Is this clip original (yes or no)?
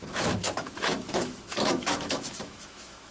no